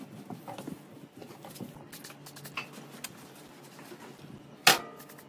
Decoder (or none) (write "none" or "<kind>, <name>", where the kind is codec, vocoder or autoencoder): none